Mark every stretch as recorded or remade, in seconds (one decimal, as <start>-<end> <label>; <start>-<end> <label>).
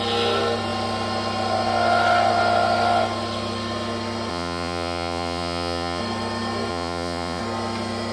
0.0-4.3 recorded; 4.3-6.0 remade; 6.0-6.7 recorded; 6.7-7.4 remade; 7.4-8.1 recorded